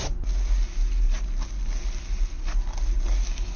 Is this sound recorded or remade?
recorded